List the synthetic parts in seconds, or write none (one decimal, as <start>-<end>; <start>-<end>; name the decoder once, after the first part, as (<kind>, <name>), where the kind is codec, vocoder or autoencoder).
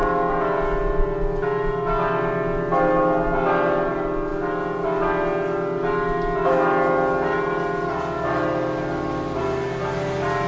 none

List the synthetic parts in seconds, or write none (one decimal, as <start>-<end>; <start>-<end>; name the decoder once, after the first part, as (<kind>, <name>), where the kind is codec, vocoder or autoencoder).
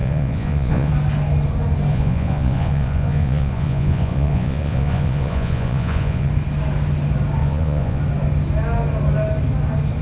0.0-0.9 (vocoder, Vocos); 1.9-6.3; 7.4-8.0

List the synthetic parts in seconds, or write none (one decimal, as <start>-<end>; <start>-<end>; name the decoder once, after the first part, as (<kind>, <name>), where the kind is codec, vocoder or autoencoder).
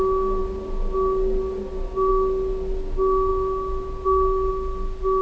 none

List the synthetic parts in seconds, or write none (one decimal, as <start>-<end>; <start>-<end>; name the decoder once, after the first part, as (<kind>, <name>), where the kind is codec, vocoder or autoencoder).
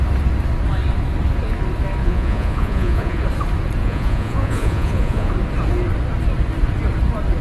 2.0-3.2 (vocoder, Vocos); 3.8-5.3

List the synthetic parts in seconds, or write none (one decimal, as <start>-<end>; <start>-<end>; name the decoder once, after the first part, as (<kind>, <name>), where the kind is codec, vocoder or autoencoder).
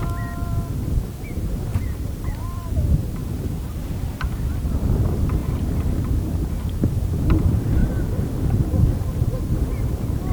1.7-2.8 (vocoder, BigVGAN v2); 3.2-3.9; 5.4-6.0; 7.8-8.7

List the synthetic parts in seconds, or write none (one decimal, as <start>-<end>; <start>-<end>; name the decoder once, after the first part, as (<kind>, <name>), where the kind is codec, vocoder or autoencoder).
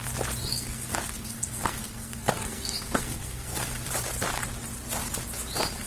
0.4-3.9 (codec, SNAC)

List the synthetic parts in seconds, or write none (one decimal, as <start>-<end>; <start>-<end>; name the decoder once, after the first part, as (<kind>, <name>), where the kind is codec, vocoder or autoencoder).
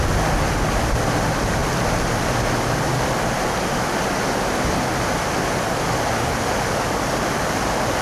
none